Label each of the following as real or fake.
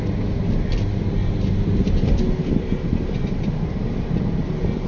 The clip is real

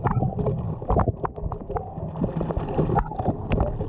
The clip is real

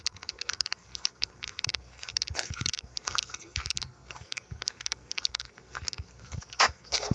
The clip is fake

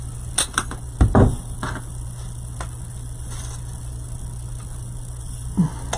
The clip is real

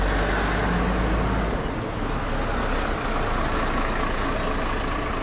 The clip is real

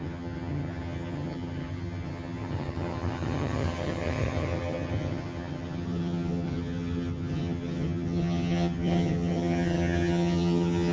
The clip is fake